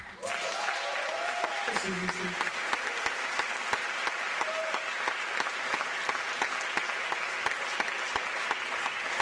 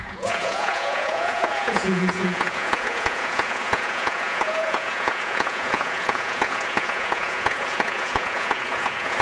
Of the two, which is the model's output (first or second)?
second